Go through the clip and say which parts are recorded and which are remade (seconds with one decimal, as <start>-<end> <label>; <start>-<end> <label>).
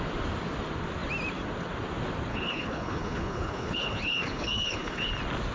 0.0-2.3 recorded; 2.3-5.1 remade; 5.1-5.5 recorded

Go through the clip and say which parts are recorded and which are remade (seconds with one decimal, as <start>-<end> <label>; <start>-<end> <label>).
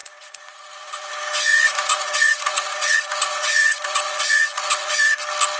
0.0-1.1 remade; 1.1-1.5 recorded; 1.5-4.9 remade; 4.9-5.6 recorded